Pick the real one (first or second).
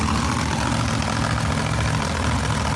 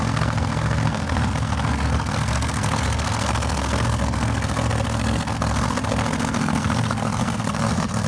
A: first